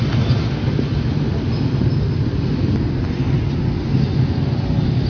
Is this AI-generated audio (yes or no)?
no